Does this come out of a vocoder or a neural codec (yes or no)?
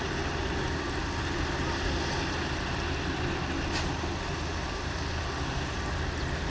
no